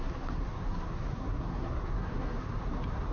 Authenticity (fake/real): fake